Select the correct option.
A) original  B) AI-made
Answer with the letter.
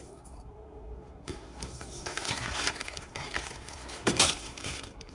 B